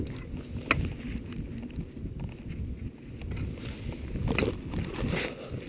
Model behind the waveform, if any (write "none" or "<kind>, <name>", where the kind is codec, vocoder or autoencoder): none